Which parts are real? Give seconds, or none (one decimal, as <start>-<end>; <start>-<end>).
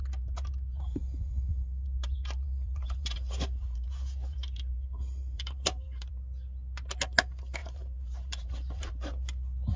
1.0-1.5; 6.1-7.6; 9.1-9.8